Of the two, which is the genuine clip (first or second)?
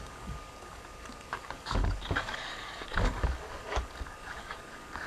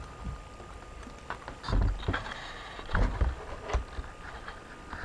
second